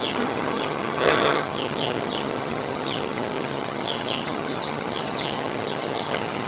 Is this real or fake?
fake